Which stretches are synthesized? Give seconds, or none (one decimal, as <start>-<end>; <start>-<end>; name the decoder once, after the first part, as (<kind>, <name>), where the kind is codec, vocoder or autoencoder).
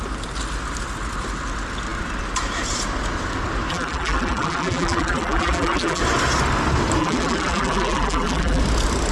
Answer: 3.7-6.0 (vocoder, BigVGAN v2); 7.0-8.6